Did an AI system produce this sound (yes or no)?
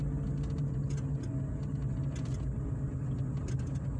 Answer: no